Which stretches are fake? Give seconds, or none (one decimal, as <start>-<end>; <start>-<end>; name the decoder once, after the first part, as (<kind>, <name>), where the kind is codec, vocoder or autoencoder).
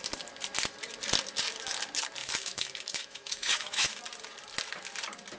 2.2-4.0 (autoencoder, DAC-VAE)